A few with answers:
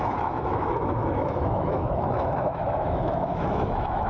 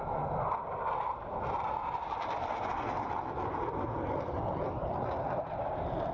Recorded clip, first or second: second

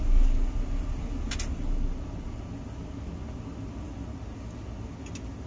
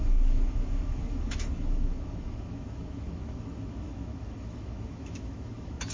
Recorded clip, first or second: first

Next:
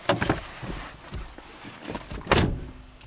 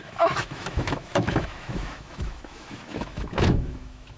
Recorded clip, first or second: first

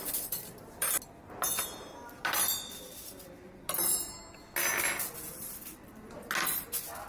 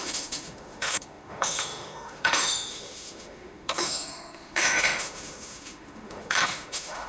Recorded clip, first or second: first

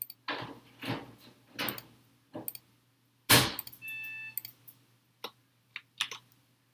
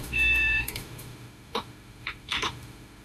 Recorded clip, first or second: first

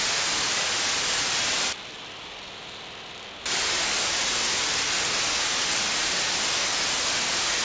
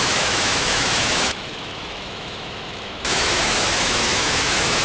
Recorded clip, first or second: first